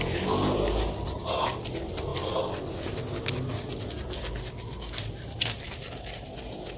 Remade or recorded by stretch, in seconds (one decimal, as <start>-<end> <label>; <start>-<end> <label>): 0.0-6.8 recorded